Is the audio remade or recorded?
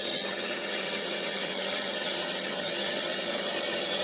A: remade